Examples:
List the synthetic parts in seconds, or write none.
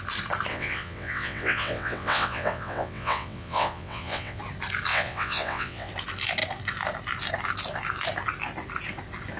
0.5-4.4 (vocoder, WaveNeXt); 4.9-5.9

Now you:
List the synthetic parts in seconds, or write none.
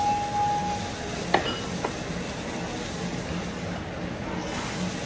none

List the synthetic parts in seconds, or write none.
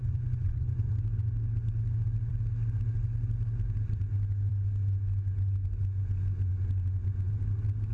0.0-0.9 (vocoder, Vocos)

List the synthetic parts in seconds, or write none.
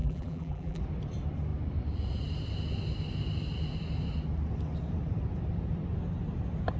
0.0-0.8 (vocoder, BigVGAN v2)